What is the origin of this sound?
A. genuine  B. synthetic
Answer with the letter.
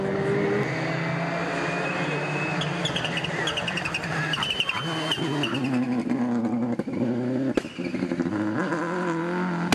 A